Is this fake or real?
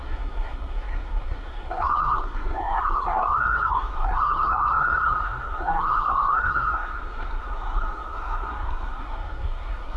fake